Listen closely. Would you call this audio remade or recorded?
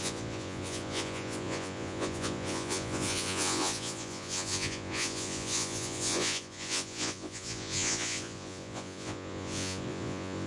remade